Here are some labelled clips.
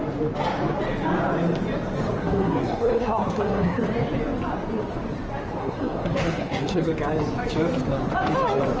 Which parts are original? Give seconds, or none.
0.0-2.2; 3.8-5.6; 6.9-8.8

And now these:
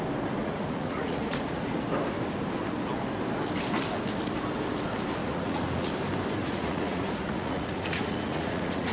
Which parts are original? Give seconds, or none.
0.0-0.4; 1.8-5.2; 5.9-6.4

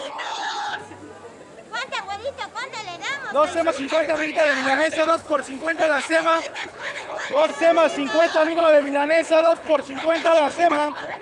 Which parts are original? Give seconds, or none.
0.8-3.7; 7.5-8.2

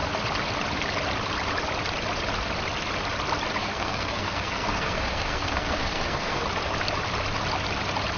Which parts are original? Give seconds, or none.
0.0-3.6; 6.4-8.2

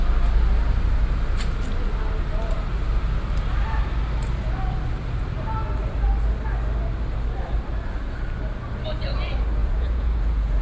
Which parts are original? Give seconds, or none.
0.0-9.6

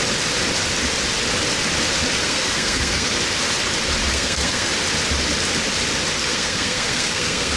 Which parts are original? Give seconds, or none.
0.0-2.2; 3.1-4.1; 4.7-6.3